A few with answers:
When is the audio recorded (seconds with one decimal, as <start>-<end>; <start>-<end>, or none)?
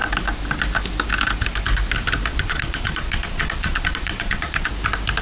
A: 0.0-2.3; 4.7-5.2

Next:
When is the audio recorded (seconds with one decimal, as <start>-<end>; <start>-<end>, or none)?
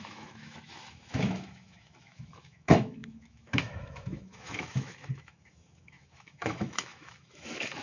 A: none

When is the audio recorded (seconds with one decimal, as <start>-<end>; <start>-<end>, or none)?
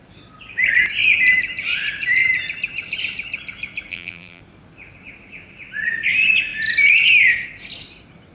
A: 0.0-3.9; 4.4-8.3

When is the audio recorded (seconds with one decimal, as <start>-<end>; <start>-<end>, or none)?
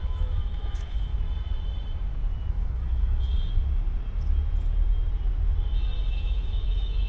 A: 1.1-2.5; 3.3-6.1